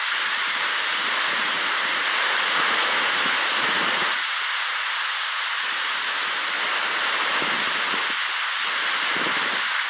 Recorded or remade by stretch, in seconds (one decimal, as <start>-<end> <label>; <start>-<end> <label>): 0.0-0.9 recorded; 0.9-4.9 remade; 4.9-9.9 recorded